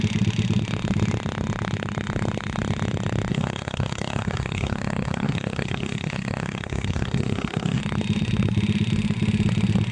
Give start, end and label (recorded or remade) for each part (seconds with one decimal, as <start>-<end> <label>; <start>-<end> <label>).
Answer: 0.0-3.3 recorded; 3.3-7.8 remade; 7.8-9.9 recorded